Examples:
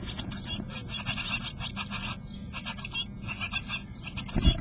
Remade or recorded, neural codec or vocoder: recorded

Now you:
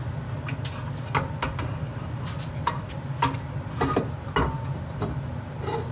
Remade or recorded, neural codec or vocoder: recorded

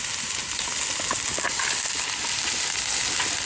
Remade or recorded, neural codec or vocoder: recorded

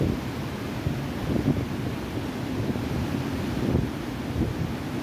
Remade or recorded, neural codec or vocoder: recorded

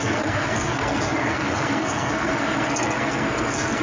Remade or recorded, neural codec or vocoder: remade, codec, SNAC